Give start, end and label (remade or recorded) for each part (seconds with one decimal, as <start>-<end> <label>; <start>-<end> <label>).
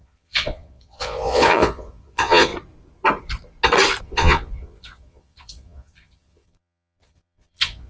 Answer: 0.0-2.5 remade; 2.5-4.0 recorded; 4.0-7.9 remade